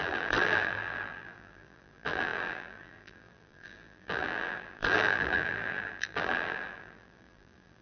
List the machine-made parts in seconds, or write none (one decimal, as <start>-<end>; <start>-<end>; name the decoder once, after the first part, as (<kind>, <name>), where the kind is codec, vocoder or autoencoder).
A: 0.0-7.8 (vocoder, BigVGAN v2)